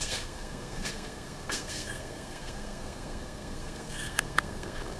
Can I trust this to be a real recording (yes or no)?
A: no